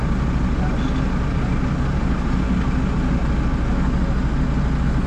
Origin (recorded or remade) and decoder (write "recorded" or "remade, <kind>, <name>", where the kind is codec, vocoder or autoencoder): recorded